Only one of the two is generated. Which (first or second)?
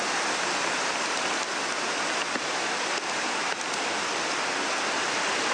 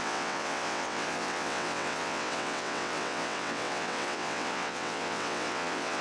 second